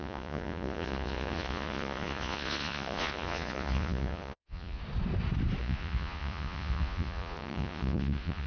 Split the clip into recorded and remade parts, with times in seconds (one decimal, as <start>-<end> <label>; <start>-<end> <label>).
0.0-4.8 remade; 4.8-5.6 recorded; 5.6-8.5 remade